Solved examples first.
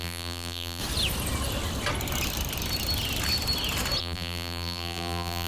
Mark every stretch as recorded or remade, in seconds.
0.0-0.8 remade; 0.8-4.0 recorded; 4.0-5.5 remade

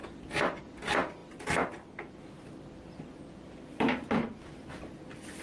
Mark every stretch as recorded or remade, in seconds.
0.0-5.4 recorded

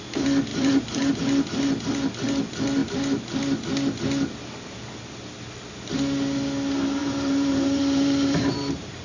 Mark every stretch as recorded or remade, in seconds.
0.0-0.5 recorded; 0.5-1.1 remade; 1.1-7.0 recorded; 7.0-9.0 remade

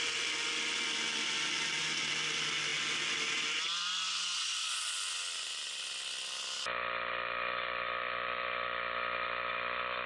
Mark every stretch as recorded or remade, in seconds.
0.0-10.1 recorded

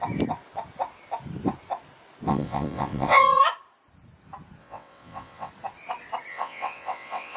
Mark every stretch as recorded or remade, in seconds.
0.0-2.3 recorded; 2.3-3.4 remade; 3.4-4.6 recorded; 4.6-5.5 remade; 5.5-6.3 recorded; 6.3-7.4 remade

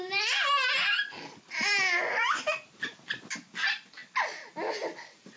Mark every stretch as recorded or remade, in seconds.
0.0-5.4 recorded

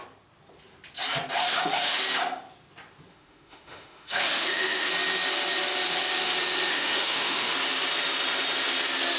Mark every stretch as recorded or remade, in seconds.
0.0-1.4 recorded; 1.4-2.0 remade; 2.0-3.1 recorded; 3.1-4.9 remade; 4.9-6.7 recorded; 6.7-7.5 remade; 7.5-9.2 recorded